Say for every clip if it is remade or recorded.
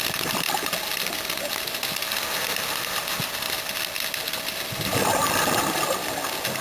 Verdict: recorded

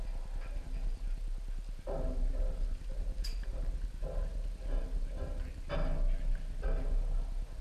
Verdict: recorded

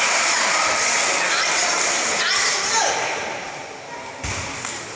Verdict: recorded